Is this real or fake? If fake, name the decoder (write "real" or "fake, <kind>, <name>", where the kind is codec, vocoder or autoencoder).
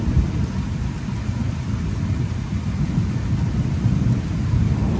real